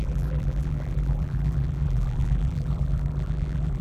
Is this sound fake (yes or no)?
yes